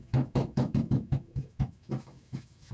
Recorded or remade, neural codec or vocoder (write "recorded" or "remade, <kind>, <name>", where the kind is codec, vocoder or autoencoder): remade, autoencoder, DAC-VAE